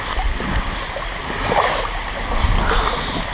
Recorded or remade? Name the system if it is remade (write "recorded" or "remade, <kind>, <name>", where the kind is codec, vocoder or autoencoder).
recorded